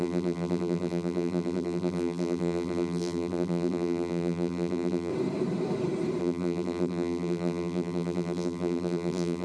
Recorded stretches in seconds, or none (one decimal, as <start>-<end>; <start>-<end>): 5.1-6.2